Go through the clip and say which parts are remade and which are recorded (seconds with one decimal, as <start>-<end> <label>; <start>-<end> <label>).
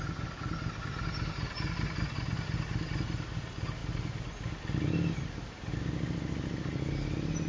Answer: 0.0-7.5 recorded